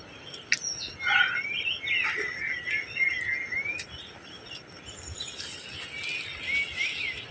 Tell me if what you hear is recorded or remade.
recorded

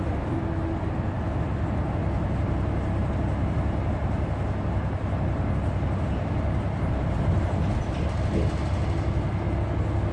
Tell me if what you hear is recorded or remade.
recorded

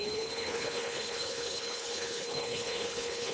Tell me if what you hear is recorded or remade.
remade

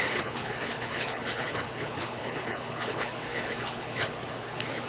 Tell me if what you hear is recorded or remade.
remade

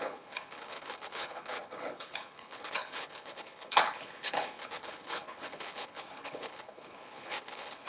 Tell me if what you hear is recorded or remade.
remade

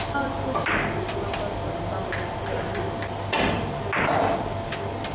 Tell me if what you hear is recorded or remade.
recorded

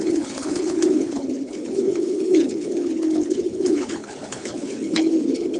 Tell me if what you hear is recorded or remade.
remade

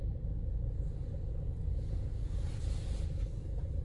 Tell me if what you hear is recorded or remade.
recorded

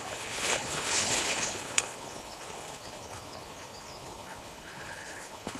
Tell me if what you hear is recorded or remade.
remade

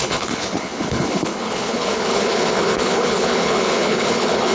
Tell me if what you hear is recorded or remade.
remade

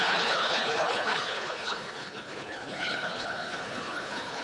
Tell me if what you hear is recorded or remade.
remade